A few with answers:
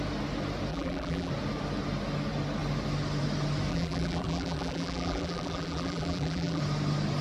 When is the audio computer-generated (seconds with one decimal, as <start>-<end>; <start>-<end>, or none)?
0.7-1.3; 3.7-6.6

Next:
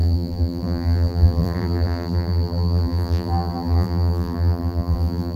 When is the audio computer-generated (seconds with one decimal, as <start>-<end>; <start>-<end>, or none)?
0.0-5.4

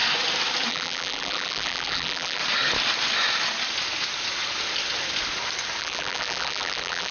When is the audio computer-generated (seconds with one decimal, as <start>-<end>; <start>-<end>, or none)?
0.7-2.4; 5.8-7.1

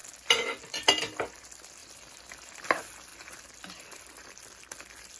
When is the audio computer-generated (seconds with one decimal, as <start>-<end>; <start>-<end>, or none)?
1.8-2.5

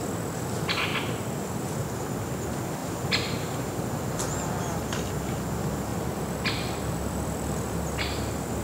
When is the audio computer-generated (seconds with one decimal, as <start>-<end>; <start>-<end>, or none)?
2.8-5.1; 5.9-7.8

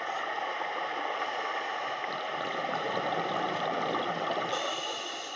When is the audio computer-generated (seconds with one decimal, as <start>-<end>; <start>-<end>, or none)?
1.7-3.8